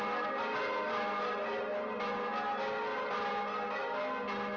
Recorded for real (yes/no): yes